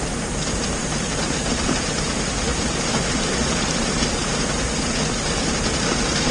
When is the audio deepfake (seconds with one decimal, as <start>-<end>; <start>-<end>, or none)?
0.0-4.2; 5.5-6.3